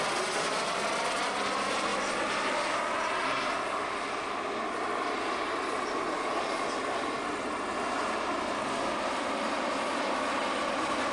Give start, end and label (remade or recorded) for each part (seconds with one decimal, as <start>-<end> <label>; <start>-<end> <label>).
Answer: 0.0-11.1 recorded